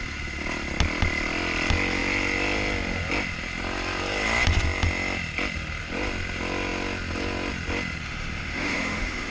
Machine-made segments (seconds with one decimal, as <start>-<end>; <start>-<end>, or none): 8.0-9.3